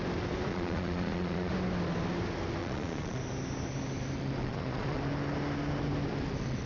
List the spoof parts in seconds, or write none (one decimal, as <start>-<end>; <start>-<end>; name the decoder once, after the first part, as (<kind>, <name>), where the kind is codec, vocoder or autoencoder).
0.5-1.5 (vocoder, Vocos); 2.6-3.2; 4.4-5.0